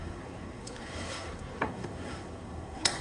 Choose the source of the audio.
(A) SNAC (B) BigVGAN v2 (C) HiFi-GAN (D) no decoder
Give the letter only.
A